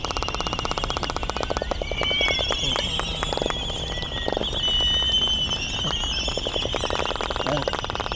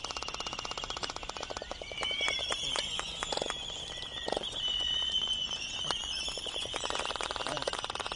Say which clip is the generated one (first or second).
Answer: second